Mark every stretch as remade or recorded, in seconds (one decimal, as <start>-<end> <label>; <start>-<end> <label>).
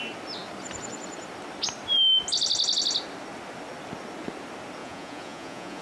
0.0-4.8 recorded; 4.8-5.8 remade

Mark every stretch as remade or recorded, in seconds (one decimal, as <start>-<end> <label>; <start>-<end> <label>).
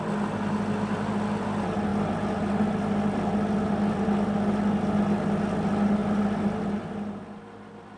0.0-1.9 recorded; 1.9-2.7 remade; 2.7-8.0 recorded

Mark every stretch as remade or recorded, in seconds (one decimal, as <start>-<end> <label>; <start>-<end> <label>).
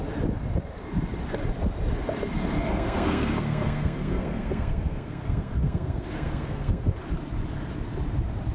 0.0-2.7 recorded; 2.7-6.9 remade; 6.9-8.5 recorded